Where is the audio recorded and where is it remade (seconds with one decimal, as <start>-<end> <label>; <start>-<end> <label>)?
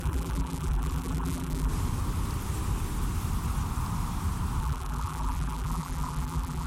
0.0-1.7 remade; 1.7-4.6 recorded; 4.6-6.7 remade